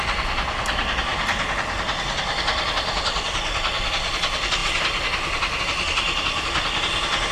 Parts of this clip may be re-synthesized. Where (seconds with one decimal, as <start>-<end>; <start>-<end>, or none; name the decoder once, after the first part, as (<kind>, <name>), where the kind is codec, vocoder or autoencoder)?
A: none